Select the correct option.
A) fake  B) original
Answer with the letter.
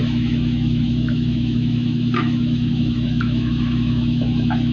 A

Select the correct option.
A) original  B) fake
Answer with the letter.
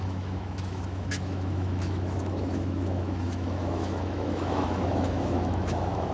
B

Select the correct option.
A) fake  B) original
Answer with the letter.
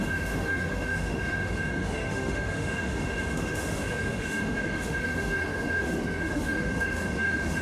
A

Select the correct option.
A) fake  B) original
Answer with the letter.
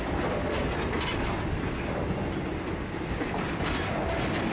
B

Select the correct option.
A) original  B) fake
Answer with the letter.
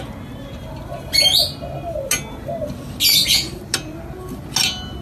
A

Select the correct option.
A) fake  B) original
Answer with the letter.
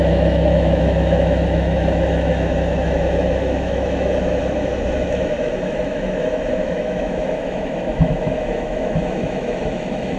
A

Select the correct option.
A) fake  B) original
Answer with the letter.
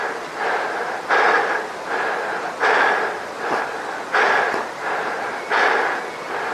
B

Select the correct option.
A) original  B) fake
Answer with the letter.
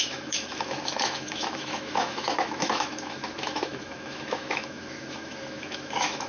B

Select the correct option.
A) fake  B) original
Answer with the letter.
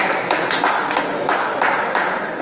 B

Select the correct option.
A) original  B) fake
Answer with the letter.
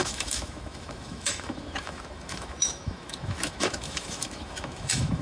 B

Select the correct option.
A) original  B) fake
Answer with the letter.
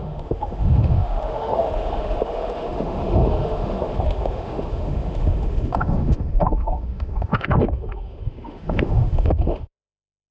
B